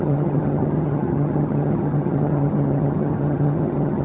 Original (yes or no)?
no